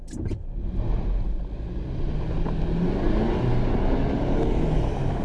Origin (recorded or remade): recorded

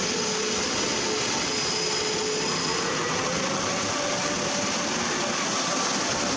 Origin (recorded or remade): recorded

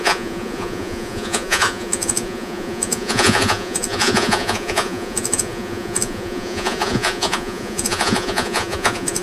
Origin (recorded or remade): remade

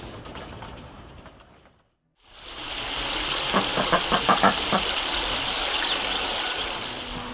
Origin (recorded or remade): recorded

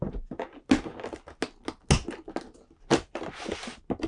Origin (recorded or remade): recorded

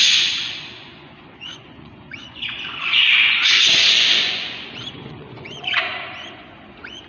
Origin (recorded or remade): remade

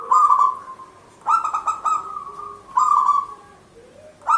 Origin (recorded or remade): recorded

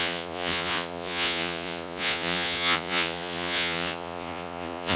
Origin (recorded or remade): remade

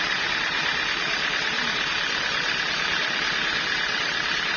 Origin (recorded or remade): remade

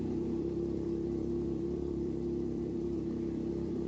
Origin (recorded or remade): remade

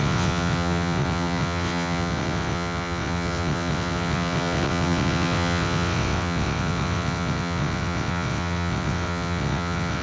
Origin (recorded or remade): remade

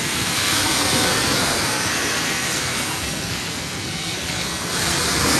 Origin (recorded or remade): remade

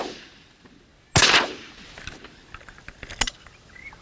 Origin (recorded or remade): recorded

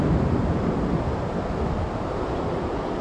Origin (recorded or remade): recorded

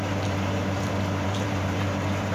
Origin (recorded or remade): remade